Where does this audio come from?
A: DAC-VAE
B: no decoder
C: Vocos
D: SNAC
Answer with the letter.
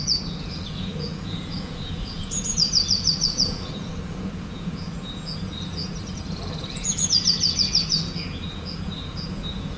C